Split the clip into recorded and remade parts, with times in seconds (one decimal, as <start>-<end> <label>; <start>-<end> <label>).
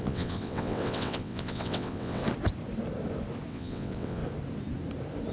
0.0-2.2 remade; 2.2-3.5 recorded; 3.5-4.2 remade; 4.2-5.3 recorded